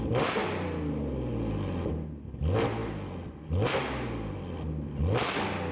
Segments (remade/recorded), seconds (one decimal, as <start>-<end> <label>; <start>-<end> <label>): 0.0-5.7 recorded